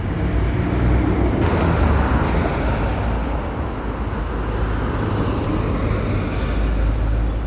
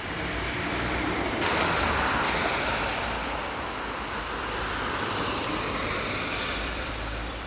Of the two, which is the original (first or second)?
first